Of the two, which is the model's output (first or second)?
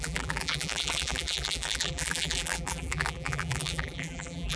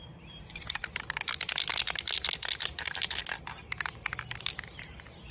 first